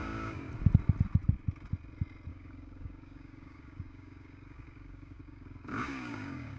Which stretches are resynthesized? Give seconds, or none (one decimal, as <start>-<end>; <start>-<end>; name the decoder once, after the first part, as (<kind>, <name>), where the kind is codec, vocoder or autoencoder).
0.0-0.5 (codec, DAC); 2.3-6.6